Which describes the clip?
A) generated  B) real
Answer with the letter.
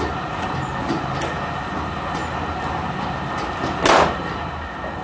B